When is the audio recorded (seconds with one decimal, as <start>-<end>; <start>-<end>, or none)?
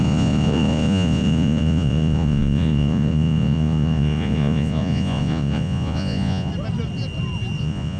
6.5-7.6